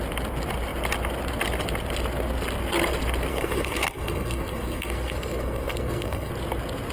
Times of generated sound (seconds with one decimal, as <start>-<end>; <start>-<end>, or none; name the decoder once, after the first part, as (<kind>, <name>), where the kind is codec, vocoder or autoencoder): 3.3-6.3 (codec, SNAC)